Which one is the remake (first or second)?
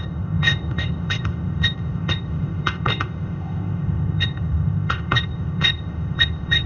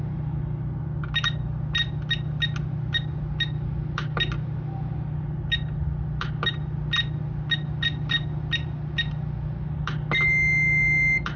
first